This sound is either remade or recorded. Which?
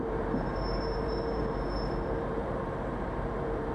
remade